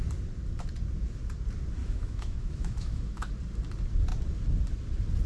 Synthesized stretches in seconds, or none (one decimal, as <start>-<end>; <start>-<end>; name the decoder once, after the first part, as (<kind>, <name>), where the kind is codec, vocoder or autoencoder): 1.8-3.3 (autoencoder, DAC-VAE)